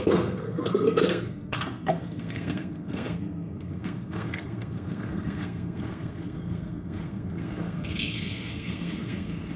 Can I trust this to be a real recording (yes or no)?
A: no